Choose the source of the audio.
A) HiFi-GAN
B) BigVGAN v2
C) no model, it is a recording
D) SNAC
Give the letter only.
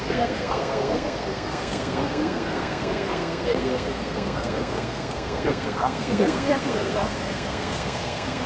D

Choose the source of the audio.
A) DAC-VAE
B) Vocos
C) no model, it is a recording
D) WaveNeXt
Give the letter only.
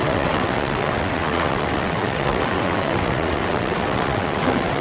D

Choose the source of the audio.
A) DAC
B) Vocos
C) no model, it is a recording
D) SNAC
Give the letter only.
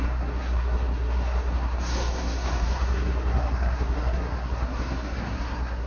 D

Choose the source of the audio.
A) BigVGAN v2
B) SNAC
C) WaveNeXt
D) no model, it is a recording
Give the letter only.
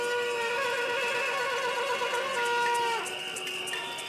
D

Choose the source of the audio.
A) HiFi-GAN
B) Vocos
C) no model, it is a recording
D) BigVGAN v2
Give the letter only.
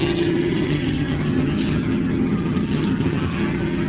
A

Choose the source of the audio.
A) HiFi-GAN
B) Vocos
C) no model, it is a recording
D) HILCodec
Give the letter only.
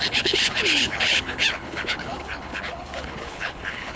D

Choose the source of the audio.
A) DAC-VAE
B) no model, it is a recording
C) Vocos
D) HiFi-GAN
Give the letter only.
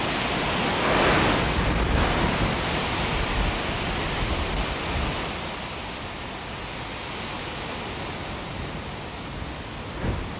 B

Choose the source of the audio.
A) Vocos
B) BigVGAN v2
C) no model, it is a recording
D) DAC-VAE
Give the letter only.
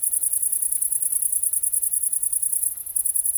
C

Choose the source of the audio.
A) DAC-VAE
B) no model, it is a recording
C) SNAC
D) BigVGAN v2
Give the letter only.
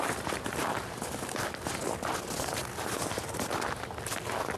B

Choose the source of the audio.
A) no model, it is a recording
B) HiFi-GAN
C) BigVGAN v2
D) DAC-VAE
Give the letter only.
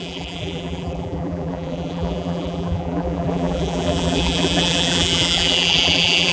C